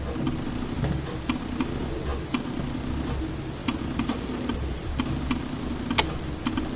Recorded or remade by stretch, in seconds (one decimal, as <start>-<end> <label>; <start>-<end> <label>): 0.0-3.6 recorded; 3.6-4.9 remade; 4.9-6.8 recorded